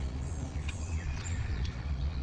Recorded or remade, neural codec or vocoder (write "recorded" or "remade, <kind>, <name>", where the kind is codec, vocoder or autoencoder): remade, vocoder, Vocos